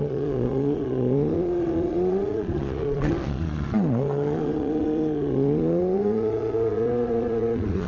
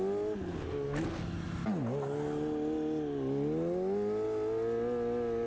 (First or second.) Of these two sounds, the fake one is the first